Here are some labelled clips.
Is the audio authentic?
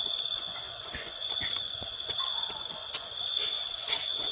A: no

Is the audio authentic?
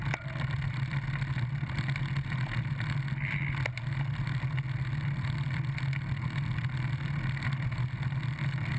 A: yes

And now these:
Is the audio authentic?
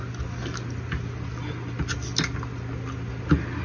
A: yes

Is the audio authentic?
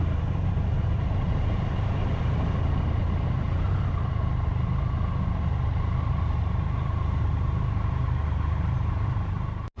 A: yes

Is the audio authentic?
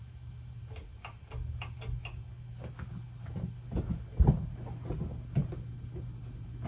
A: yes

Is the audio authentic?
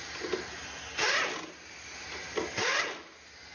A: yes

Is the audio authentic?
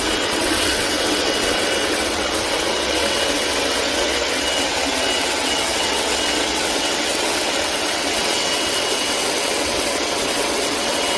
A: no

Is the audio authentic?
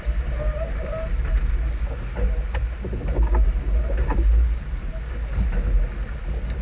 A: yes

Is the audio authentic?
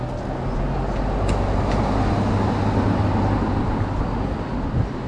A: yes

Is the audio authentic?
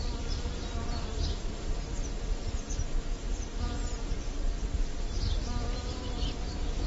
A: yes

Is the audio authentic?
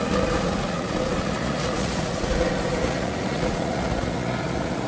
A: no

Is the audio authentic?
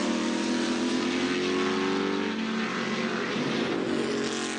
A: yes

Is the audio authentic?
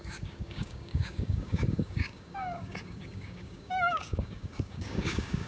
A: no